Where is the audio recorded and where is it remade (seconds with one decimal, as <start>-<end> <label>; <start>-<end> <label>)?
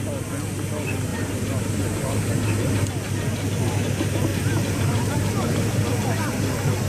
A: 0.0-1.1 recorded; 1.1-2.9 remade; 2.9-4.3 recorded; 4.3-6.4 remade; 6.4-6.9 recorded